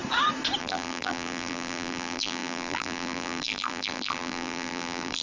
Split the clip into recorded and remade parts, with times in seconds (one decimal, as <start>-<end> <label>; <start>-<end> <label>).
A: 0.0-0.6 recorded; 0.6-5.2 remade